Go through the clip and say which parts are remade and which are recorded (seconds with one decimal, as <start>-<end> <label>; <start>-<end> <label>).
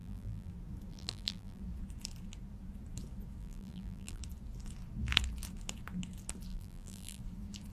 0.0-0.5 remade; 0.5-0.9 recorded; 0.9-1.6 remade; 1.6-3.4 recorded; 3.4-4.2 remade; 4.2-6.5 recorded; 6.5-7.2 remade; 7.2-7.7 recorded